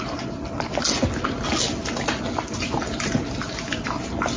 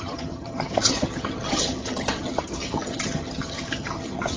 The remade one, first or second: second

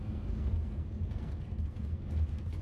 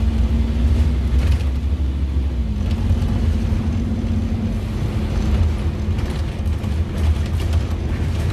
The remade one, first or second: first